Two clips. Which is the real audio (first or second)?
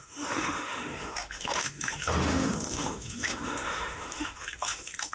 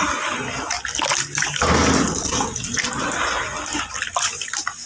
second